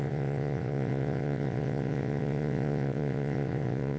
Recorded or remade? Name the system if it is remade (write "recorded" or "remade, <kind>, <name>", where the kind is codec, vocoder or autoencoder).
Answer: remade, vocoder, WaveNeXt